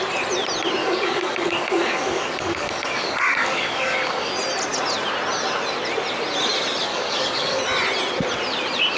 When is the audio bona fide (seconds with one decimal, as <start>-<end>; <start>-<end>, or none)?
0.0-0.8; 4.3-6.9; 7.6-9.0